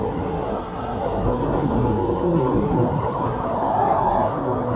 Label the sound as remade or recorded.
remade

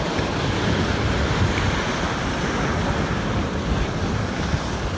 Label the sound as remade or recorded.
recorded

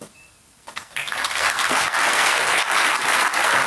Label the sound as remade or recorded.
remade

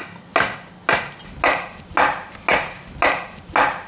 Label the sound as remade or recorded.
recorded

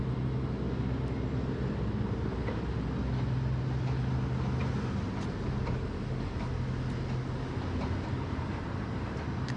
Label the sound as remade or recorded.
recorded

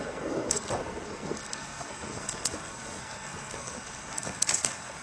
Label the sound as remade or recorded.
remade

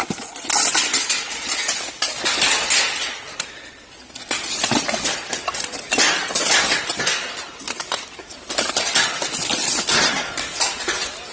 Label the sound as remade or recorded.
recorded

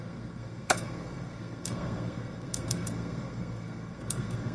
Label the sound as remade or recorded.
remade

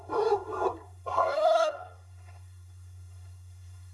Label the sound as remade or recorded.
remade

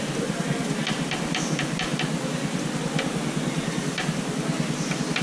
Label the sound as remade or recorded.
recorded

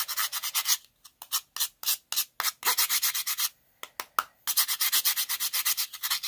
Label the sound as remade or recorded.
recorded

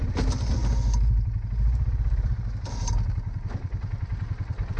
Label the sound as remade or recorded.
recorded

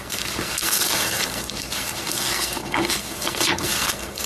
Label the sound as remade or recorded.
remade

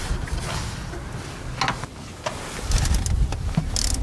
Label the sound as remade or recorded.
recorded